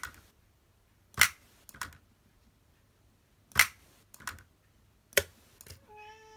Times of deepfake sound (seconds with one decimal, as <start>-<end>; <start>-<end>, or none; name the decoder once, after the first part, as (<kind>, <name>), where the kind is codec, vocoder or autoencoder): none